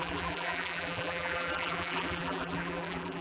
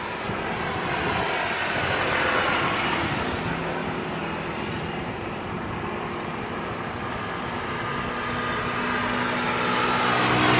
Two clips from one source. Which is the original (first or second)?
second